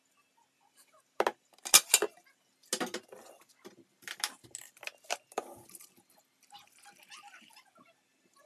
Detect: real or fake real